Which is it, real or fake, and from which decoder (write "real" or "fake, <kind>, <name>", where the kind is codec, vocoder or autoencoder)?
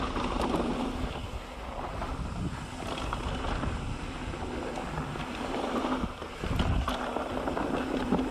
real